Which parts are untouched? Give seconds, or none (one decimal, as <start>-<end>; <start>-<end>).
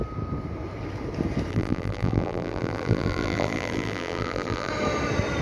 0.0-1.5; 4.7-5.4